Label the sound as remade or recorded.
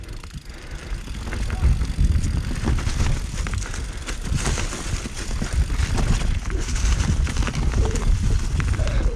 recorded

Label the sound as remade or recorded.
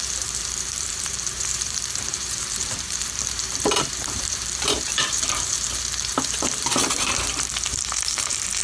remade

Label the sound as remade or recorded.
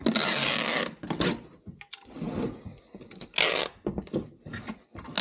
recorded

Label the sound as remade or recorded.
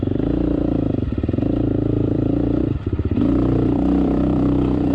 remade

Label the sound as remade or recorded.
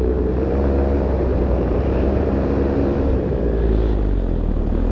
remade